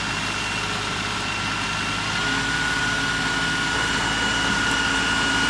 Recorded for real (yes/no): yes